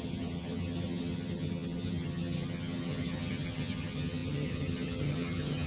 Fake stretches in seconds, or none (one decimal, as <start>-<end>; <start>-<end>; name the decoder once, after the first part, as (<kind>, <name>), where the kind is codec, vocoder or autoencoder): 0.0-5.7 (vocoder, HiFi-GAN)